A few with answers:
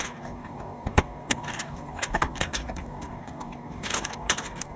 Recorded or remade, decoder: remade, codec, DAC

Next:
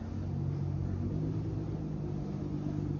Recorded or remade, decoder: recorded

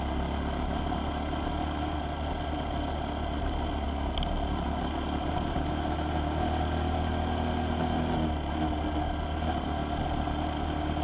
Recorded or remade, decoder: recorded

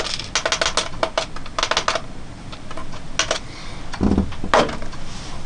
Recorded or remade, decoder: recorded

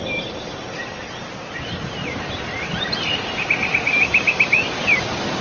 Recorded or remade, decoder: remade, vocoder, BigVGAN v2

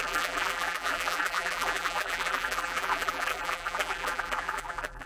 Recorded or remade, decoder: remade, vocoder, BigVGAN v2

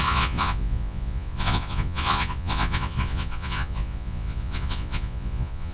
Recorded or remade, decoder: remade, vocoder, Vocos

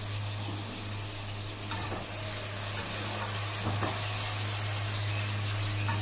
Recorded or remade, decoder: recorded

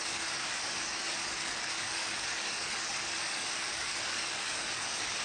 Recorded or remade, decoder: remade, codec, DAC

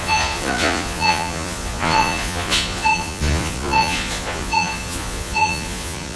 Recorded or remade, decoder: remade, vocoder, Vocos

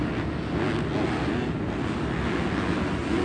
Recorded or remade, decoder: recorded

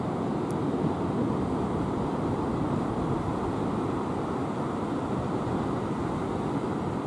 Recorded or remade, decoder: remade, vocoder, BigVGAN v2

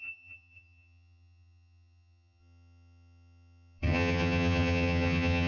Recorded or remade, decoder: remade, vocoder, HiFi-GAN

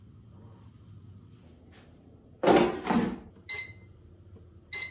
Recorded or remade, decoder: recorded